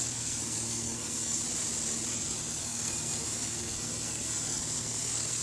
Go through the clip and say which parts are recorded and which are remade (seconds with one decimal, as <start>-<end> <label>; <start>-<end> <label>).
0.0-1.4 remade; 1.4-2.1 recorded; 2.1-5.4 remade